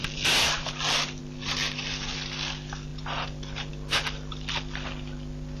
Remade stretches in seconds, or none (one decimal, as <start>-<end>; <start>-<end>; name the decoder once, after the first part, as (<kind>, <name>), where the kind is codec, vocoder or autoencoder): 0.0-5.6 (vocoder, BigVGAN v2)